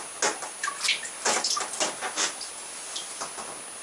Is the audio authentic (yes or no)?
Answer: yes